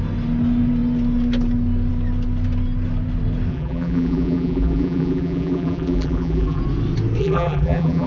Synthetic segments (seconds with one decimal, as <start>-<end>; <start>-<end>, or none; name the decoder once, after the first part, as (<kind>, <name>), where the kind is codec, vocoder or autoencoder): 3.5-6.6 (vocoder, BigVGAN v2); 7.2-8.1